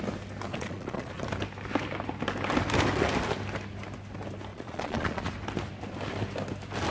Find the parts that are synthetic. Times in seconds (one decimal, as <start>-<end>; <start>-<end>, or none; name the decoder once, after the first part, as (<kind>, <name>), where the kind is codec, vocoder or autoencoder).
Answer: 0.5-1.2 (vocoder, Vocos); 4.5-5.3